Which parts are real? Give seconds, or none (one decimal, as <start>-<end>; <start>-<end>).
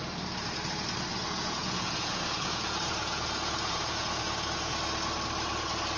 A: 0.0-1.2; 4.7-6.0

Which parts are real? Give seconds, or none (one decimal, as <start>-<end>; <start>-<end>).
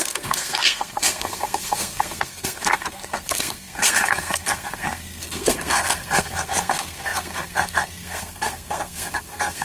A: none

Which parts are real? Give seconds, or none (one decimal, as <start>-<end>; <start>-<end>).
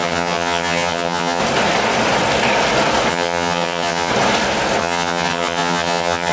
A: 1.4-3.1; 4.1-4.8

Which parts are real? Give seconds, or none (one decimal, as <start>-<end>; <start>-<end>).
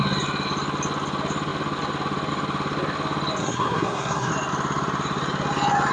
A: 0.0-3.4; 4.3-5.9